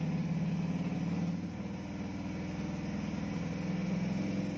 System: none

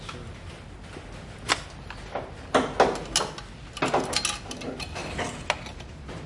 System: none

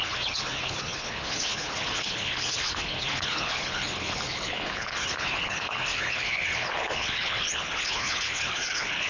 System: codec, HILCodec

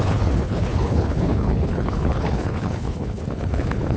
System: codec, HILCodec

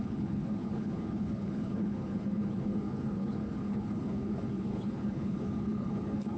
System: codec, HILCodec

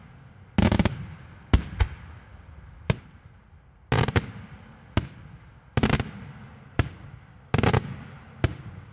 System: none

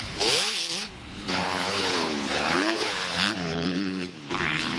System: codec, HILCodec